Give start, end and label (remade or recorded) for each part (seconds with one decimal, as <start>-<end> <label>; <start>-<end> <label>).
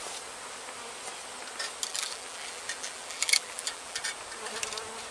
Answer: 0.0-1.9 recorded; 1.9-4.0 remade; 4.0-5.1 recorded